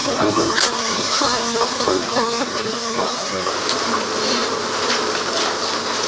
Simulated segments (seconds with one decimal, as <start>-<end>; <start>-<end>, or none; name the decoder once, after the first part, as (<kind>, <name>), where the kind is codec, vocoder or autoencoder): 0.0-3.5 (codec, SNAC)